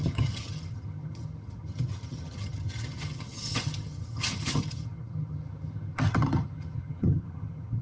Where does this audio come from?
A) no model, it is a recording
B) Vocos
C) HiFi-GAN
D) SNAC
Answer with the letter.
C